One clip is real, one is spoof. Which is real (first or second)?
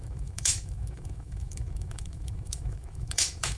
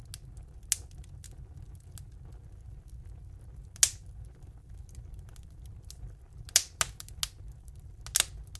second